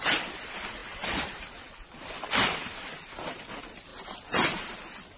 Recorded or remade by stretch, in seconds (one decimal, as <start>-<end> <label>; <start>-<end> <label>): 0.0-5.2 recorded